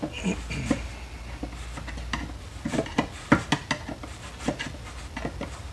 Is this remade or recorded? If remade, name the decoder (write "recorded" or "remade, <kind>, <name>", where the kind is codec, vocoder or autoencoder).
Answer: recorded